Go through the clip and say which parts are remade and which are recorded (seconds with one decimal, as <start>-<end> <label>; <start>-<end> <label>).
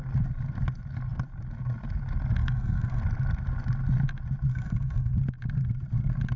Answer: 0.0-2.4 recorded; 2.4-3.0 remade; 3.0-4.5 recorded; 4.5-5.1 remade; 5.1-6.4 recorded